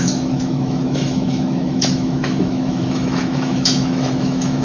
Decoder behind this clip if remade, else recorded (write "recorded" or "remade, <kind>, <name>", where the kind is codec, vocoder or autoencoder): remade, autoencoder, DAC-VAE